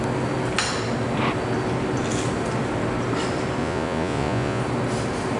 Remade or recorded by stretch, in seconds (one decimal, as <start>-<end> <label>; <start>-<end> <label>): 0.0-3.6 recorded; 3.6-4.6 remade; 4.6-5.4 recorded